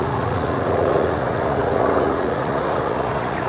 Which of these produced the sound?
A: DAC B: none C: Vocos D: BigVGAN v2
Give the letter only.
C